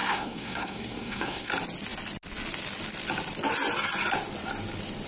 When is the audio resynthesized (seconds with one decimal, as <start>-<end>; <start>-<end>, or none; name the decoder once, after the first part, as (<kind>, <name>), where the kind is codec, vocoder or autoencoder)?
0.0-1.5 (codec, SNAC)